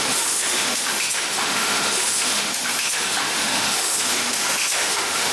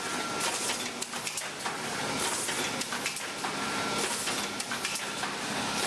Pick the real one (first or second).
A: second